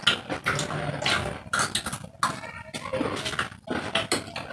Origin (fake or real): real